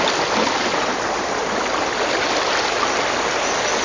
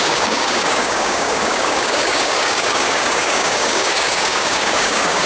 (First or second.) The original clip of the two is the first